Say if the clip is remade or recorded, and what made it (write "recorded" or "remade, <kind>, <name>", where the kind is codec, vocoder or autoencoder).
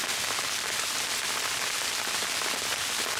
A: recorded